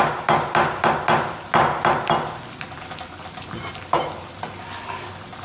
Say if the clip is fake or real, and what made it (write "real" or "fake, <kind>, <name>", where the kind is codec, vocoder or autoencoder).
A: real